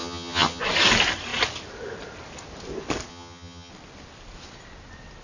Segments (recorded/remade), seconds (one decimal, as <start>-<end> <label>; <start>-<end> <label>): 0.0-0.6 remade; 0.6-3.1 recorded; 3.1-3.7 remade; 3.7-5.2 recorded

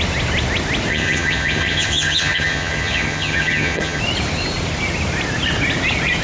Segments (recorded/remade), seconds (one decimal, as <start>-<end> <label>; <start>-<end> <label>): 0.0-0.9 recorded; 0.9-4.0 remade; 4.0-6.2 recorded